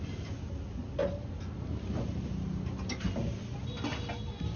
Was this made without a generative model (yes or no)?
yes